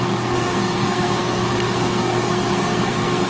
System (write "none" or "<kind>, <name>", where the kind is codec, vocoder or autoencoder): codec, SNAC